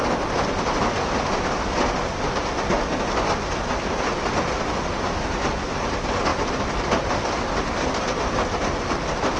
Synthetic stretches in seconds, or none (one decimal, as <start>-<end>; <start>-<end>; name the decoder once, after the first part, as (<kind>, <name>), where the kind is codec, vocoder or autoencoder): none